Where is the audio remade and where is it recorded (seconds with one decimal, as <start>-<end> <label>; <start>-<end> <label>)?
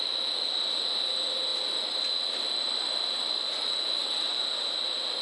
0.0-5.2 recorded